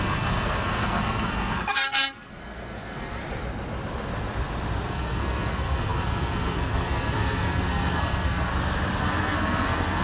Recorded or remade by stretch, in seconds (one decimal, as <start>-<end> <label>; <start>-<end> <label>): 0.0-3.2 remade; 3.2-4.9 recorded; 4.9-8.5 remade; 8.5-9.0 recorded; 9.0-10.0 remade